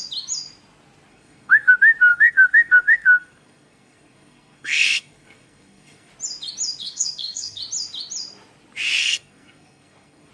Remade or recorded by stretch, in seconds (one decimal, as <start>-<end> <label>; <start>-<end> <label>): 0.0-1.1 recorded; 1.1-1.7 remade; 1.7-2.1 recorded; 2.1-6.1 remade; 6.1-6.8 recorded; 6.8-7.6 remade; 7.6-9.0 recorded; 9.0-10.3 remade